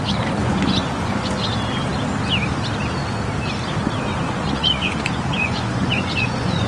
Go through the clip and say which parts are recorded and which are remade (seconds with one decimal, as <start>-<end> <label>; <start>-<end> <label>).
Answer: 0.0-0.4 recorded; 0.4-1.3 remade; 1.3-4.1 recorded; 4.1-6.7 remade